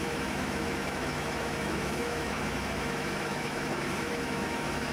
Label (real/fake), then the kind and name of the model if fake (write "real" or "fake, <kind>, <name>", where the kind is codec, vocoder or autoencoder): fake, autoencoder, DAC-VAE